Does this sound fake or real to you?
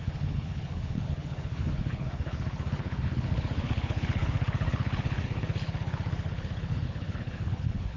fake